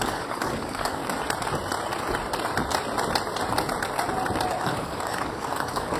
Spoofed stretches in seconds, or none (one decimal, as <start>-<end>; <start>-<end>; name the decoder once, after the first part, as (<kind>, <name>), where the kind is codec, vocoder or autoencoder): 0.0-1.0 (codec, DAC); 4.6-6.0